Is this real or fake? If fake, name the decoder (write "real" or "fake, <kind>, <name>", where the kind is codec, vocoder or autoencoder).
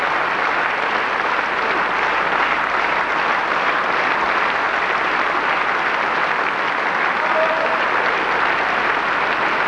real